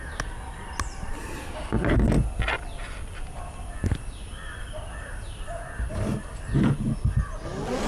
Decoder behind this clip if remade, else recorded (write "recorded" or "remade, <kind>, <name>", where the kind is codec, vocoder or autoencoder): recorded